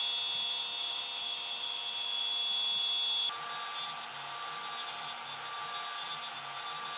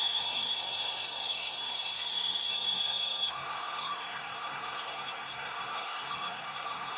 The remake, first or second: second